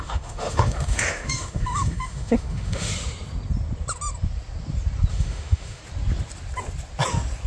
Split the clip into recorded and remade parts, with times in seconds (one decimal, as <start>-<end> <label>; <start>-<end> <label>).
0.0-2.9 remade; 2.9-5.1 recorded; 5.1-5.8 remade; 5.8-7.5 recorded